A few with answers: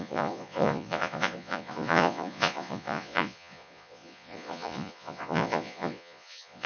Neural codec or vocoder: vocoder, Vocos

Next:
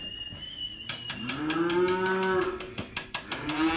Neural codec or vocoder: none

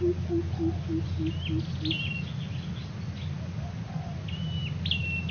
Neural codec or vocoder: none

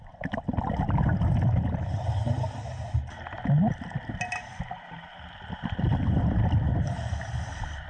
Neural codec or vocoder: none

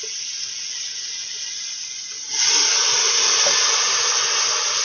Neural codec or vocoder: none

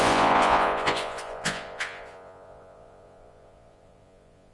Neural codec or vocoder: vocoder, Vocos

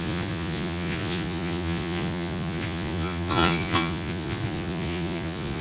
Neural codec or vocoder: vocoder, Vocos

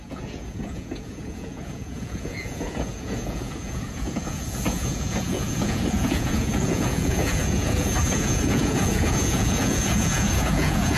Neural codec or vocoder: vocoder, Vocos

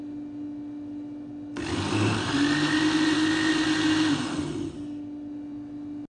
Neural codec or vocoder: none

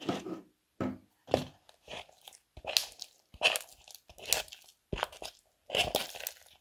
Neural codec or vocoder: none